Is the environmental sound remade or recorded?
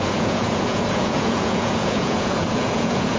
remade